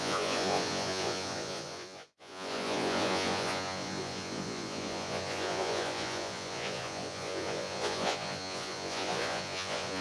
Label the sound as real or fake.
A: fake